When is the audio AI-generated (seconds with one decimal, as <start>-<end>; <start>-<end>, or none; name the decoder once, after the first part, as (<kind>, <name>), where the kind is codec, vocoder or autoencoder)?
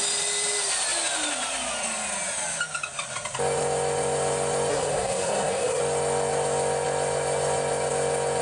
4.7-5.8 (codec, SNAC)